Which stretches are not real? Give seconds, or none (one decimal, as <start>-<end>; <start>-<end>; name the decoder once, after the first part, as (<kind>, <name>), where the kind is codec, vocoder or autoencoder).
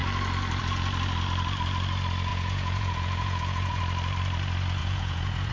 2.3-3.8 (vocoder, Vocos); 4.8-5.5